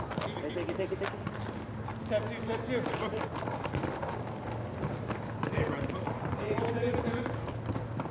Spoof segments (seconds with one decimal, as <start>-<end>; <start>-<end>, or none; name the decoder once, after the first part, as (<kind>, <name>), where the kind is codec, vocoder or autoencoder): none